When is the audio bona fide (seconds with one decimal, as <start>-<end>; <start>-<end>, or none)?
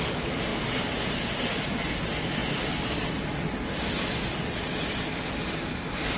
0.0-6.2